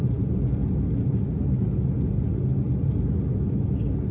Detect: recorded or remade recorded